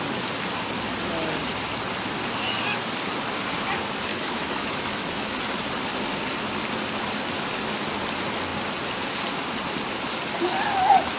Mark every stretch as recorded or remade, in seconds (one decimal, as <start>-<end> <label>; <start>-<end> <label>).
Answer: 0.0-4.1 recorded; 4.1-5.4 remade; 5.4-11.2 recorded